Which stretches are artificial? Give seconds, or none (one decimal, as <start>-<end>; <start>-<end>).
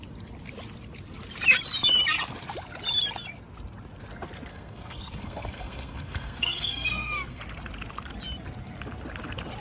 4.5-7.4